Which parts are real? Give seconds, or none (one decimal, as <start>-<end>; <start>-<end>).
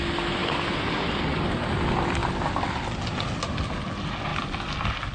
0.0-5.1